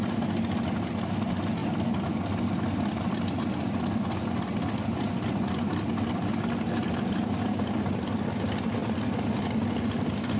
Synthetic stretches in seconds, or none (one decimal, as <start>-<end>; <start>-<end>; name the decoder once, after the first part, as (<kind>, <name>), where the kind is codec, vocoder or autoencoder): none